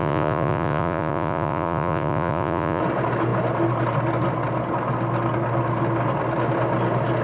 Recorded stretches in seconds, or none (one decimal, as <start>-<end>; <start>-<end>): 2.8-7.2